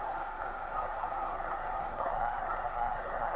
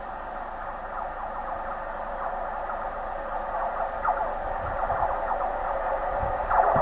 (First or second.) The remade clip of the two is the first